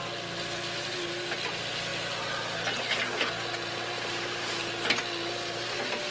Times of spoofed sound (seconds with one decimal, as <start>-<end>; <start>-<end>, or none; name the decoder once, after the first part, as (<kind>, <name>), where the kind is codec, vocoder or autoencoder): none